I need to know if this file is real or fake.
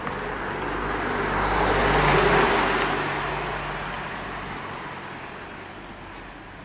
real